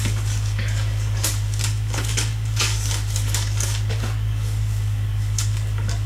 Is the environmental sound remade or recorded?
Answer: remade